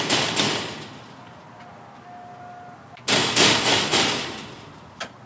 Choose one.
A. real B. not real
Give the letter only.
A